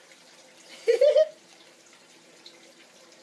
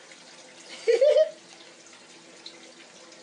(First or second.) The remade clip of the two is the first